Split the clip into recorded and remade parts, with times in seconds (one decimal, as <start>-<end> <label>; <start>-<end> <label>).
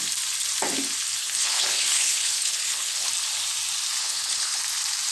0.0-1.2 recorded; 1.2-3.1 remade; 3.1-4.0 recorded; 4.0-4.6 remade; 4.6-5.1 recorded